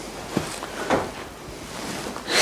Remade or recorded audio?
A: recorded